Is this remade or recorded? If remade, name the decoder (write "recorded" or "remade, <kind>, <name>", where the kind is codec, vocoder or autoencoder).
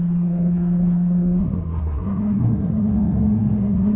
remade, codec, SNAC